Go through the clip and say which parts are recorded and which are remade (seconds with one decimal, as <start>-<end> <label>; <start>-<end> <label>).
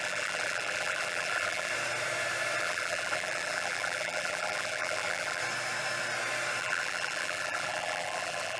0.0-1.7 remade; 1.7-2.6 recorded; 2.6-5.4 remade; 5.4-6.6 recorded; 6.6-8.6 remade